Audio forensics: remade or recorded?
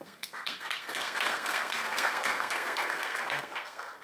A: remade